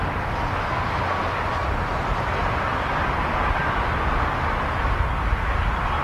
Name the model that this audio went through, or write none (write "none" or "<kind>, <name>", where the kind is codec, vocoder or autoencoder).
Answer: none